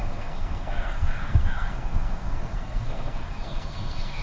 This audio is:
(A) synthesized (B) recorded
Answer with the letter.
A